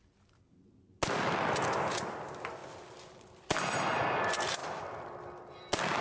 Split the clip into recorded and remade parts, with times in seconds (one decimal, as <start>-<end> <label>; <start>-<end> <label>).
0.0-6.0 recorded